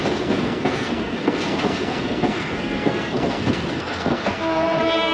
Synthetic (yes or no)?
yes